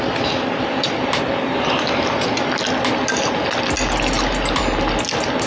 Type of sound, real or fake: real